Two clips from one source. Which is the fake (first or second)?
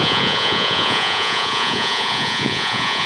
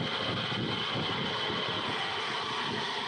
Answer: first